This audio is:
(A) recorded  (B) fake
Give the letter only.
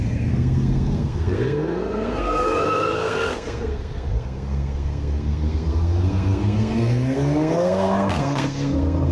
B